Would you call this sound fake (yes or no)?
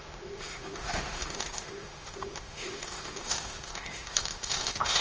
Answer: yes